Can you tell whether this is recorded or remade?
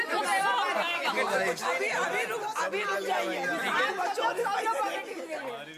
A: recorded